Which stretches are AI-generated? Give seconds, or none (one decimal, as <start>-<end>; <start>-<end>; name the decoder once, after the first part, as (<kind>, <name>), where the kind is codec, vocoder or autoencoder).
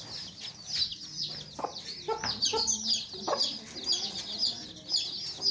none